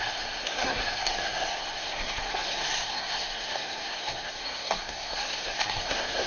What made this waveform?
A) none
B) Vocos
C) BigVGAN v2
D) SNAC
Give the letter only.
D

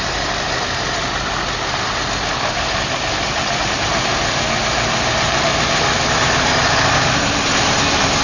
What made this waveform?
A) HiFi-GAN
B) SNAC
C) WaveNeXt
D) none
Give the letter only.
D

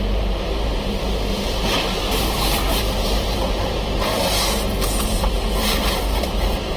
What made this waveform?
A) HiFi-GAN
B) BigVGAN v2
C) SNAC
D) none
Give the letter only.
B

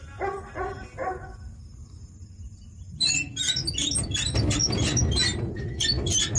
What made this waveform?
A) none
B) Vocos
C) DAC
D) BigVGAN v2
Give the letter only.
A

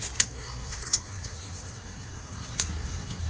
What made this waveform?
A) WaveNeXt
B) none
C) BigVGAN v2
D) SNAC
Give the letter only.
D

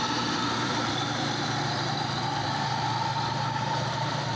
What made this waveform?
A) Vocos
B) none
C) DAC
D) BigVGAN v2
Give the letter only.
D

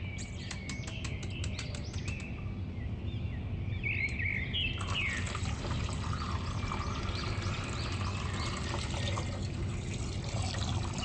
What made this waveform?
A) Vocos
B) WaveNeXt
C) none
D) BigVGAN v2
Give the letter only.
C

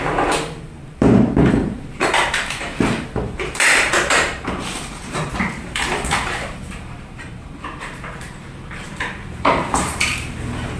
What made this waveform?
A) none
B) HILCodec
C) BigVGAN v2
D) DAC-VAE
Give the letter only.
C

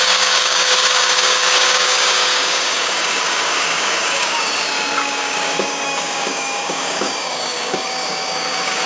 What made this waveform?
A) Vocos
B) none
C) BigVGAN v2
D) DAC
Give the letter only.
D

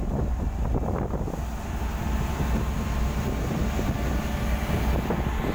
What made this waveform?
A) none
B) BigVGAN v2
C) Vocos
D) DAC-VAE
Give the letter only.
A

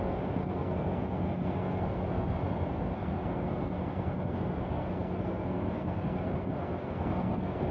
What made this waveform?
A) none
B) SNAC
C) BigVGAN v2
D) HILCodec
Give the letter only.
B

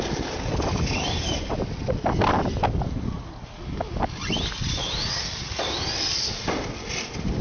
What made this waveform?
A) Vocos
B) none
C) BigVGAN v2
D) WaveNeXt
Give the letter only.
B